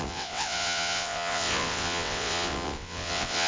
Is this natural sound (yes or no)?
no